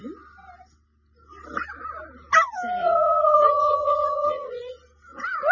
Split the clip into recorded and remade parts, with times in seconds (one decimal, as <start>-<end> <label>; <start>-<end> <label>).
0.0-2.8 recorded; 2.8-4.6 remade; 4.6-5.5 recorded